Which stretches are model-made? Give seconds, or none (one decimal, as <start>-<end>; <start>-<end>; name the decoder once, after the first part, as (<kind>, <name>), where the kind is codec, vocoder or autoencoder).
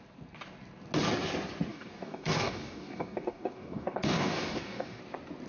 1.7-5.0 (codec, DAC)